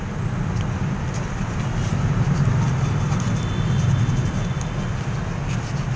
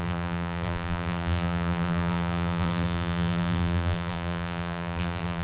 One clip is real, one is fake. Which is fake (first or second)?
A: second